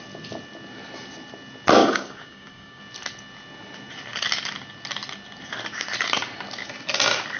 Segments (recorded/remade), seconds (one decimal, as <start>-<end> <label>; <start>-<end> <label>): 0.0-1.8 recorded; 1.8-2.8 remade; 2.8-7.4 recorded